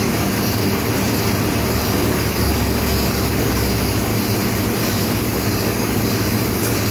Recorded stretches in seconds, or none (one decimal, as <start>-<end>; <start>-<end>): 0.6-1.7; 4.1-4.8